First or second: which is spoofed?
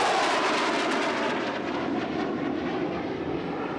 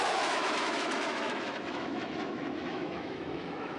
second